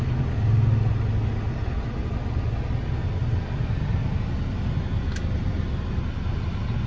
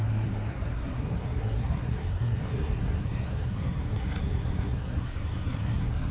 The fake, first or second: second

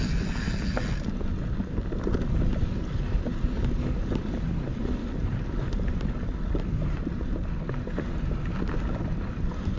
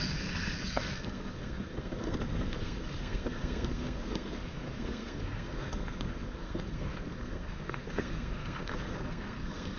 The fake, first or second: second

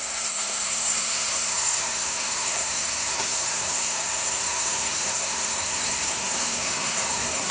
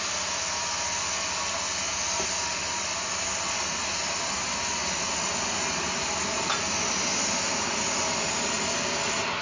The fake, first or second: first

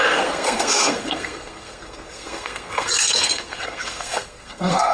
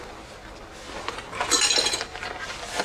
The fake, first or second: first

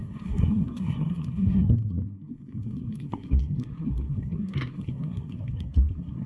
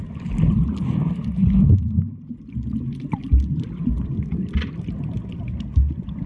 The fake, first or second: first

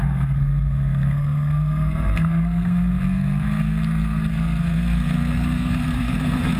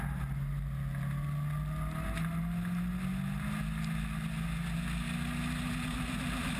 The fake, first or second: first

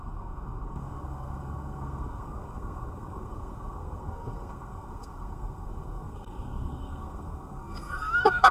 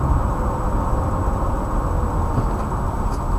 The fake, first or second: first